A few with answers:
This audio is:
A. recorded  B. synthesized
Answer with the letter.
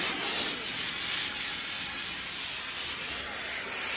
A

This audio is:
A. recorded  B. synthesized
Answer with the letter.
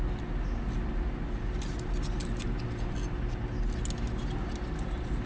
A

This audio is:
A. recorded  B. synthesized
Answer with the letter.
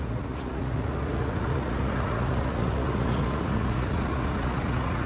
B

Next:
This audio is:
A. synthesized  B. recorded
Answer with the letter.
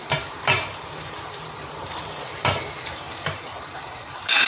A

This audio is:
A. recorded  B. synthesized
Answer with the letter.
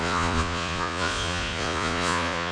B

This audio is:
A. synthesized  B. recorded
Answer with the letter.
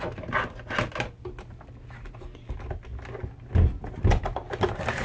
B